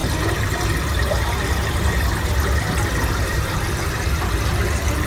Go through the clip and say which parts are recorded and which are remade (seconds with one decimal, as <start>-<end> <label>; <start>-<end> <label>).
0.0-3.1 recorded; 3.1-5.1 remade